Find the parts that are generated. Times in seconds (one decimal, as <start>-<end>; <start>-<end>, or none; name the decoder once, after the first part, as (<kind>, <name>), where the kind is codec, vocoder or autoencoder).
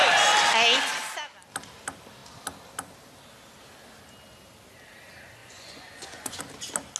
5.4-6.4 (vocoder, Vocos)